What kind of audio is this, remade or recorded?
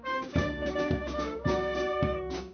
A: remade